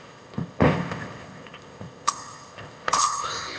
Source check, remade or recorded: remade